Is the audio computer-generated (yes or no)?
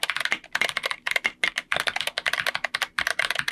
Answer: no